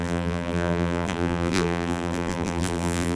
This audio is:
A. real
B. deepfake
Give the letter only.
B